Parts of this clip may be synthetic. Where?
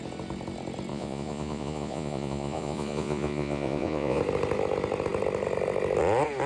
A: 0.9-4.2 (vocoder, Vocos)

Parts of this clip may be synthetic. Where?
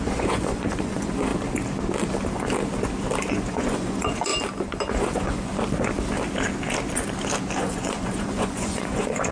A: 0.0-1.3 (vocoder, Vocos); 3.3-4.3; 4.9-5.5; 7.6-9.3